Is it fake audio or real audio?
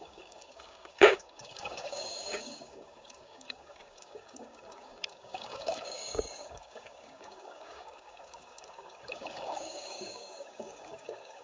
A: fake